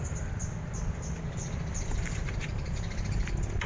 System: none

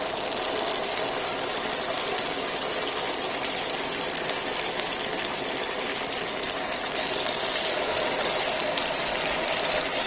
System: none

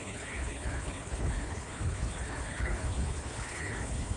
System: codec, HILCodec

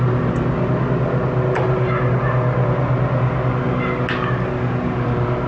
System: none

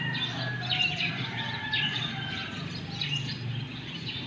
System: none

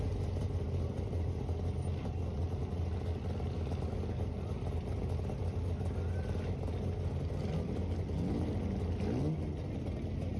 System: none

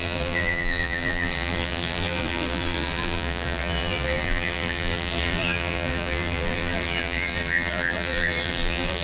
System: vocoder, BigVGAN v2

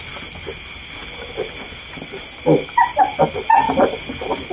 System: none